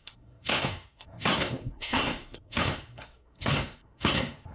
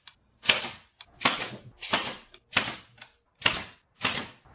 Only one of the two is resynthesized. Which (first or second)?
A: first